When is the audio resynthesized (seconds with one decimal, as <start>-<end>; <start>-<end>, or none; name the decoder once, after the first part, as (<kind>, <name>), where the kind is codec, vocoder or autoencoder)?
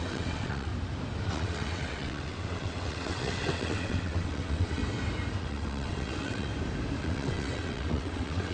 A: 0.0-0.7 (vocoder, WaveNeXt); 1.3-4.8; 5.4-6.5; 7.0-8.5